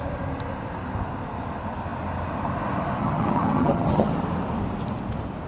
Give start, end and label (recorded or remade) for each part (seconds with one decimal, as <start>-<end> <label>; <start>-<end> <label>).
0.0-3.0 recorded; 3.0-4.1 remade; 4.1-5.5 recorded